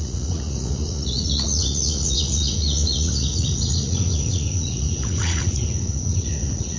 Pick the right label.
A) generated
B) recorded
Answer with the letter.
A